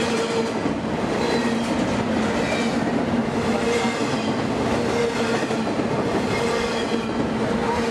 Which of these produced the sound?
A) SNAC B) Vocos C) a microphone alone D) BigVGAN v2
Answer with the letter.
C